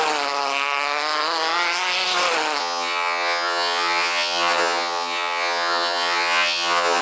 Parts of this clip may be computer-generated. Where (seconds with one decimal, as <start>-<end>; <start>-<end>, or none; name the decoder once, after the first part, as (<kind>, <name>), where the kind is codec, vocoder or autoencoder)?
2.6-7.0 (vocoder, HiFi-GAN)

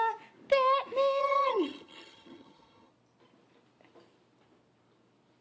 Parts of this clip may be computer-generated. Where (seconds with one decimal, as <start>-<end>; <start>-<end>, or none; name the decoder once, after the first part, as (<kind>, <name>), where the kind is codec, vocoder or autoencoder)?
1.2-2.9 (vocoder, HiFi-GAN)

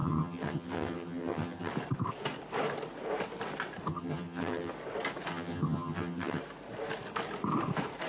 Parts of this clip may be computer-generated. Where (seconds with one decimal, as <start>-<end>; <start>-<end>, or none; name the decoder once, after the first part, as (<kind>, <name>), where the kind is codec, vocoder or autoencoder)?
0.0-1.7 (vocoder, HiFi-GAN); 3.9-4.7; 5.3-6.4

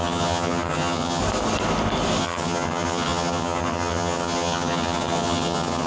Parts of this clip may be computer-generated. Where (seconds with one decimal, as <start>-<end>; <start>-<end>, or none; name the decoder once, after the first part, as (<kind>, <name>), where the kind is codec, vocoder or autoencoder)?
0.0-1.2 (vocoder, HiFi-GAN); 2.2-5.9

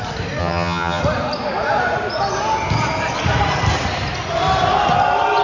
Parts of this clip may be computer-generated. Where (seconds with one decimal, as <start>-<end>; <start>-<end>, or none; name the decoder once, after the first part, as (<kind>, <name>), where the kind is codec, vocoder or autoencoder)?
0.4-1.0 (vocoder, HiFi-GAN)

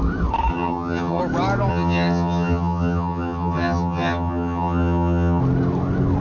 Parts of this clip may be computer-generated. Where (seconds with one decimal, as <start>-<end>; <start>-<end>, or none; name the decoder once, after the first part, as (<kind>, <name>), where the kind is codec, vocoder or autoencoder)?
0.5-1.2 (vocoder, HiFi-GAN); 1.7-5.4